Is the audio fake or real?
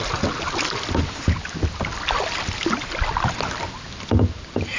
real